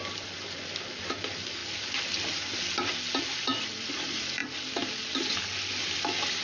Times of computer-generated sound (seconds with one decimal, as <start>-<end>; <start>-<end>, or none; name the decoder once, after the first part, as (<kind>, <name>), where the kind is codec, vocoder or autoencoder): 0.0-1.6 (vocoder, BigVGAN v2); 3.3-4.4; 5.8-6.4